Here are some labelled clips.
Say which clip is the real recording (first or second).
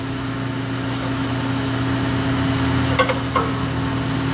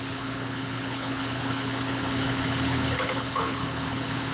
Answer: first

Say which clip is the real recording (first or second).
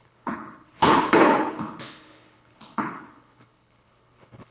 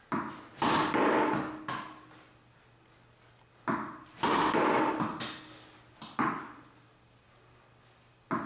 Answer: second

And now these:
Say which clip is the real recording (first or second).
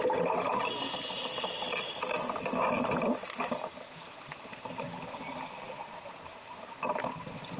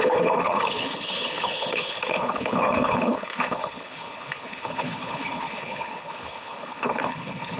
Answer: first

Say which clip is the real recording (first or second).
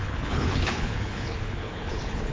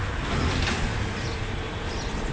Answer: second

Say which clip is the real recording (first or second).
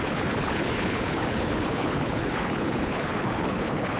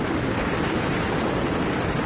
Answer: second